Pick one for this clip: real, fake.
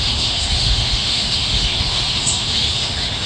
fake